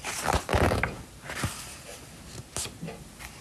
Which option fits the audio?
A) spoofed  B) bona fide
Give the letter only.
B